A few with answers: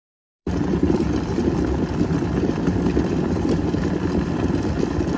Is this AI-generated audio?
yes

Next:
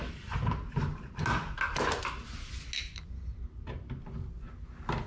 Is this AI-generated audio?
no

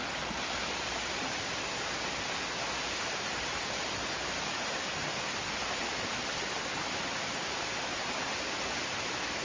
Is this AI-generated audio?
no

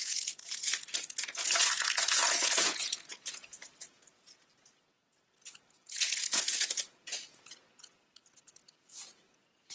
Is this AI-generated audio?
yes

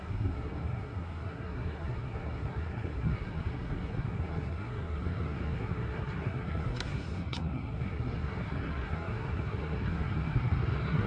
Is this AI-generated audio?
yes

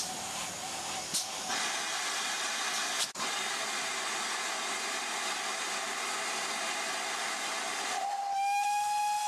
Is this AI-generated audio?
no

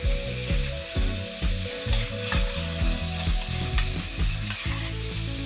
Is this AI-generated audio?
no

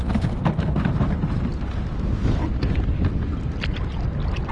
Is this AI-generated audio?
no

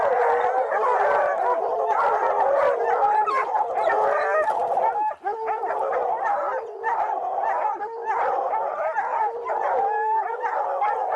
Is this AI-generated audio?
no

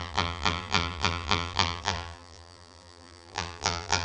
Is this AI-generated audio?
yes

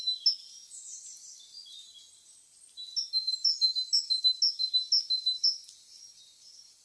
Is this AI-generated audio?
no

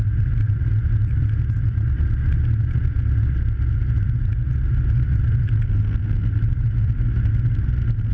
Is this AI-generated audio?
no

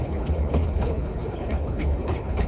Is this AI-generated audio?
yes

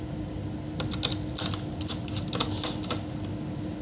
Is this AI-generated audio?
no